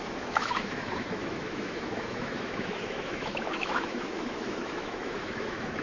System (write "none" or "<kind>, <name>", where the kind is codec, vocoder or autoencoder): autoencoder, DAC-VAE